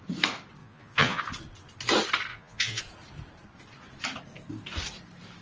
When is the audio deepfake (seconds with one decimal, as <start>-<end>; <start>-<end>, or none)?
0.6-1.2; 2.3-2.8